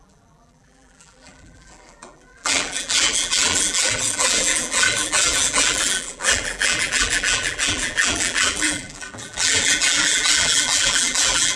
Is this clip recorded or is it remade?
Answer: remade